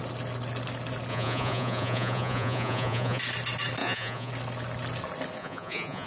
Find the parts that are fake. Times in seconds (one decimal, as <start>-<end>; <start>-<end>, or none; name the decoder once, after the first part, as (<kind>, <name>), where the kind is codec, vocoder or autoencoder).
1.1-3.2 (vocoder, Vocos); 3.8-4.3; 5.4-6.1